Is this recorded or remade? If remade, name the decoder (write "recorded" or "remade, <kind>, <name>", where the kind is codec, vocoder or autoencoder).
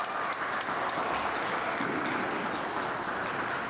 recorded